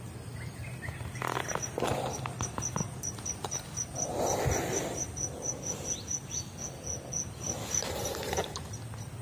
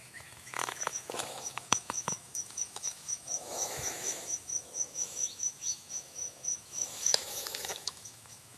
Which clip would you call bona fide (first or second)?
first